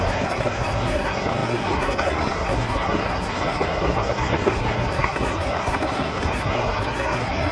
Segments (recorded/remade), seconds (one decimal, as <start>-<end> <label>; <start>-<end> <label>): 0.0-7.5 remade